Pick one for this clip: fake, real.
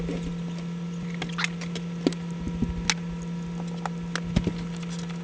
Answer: real